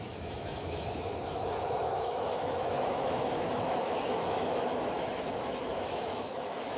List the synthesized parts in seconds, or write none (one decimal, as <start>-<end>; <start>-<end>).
0.0-6.8